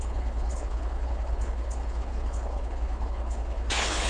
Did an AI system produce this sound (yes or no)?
yes